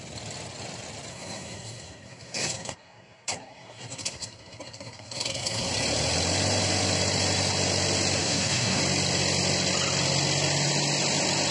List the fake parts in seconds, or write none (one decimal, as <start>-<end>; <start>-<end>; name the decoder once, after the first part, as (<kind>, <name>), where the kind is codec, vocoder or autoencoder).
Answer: 1.1-5.7 (codec, SNAC); 8.2-8.8